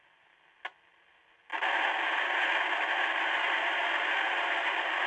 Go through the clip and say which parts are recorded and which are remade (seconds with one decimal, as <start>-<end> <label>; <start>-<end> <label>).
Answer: 0.0-5.1 recorded